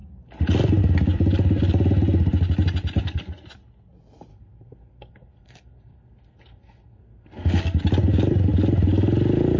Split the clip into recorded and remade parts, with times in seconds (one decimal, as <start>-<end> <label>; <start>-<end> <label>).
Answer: 0.0-3.0 recorded; 3.0-3.5 remade; 3.5-4.3 recorded; 4.3-7.6 remade; 7.6-9.6 recorded